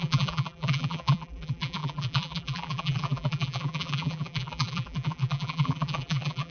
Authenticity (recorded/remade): remade